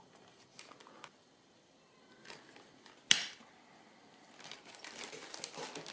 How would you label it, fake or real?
real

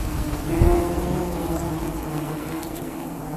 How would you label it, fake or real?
fake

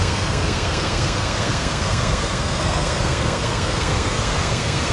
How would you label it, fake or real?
fake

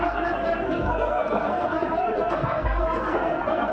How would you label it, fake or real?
fake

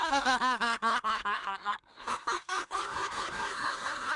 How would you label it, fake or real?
fake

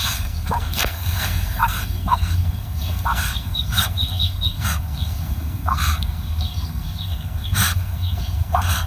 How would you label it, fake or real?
fake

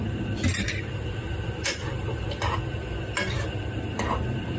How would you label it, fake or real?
real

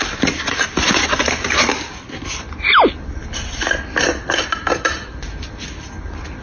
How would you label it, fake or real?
real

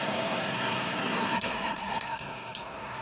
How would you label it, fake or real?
fake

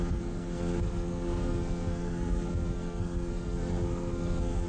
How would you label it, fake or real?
fake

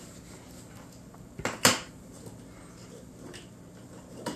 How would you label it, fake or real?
real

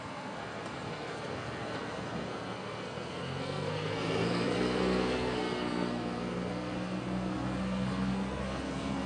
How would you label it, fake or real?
fake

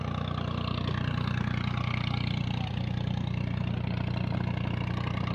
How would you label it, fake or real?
real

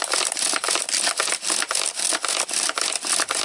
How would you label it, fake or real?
real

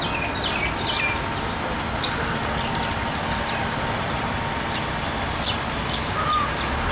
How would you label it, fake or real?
real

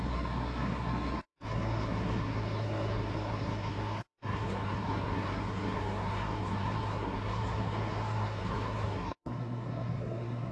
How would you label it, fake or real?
fake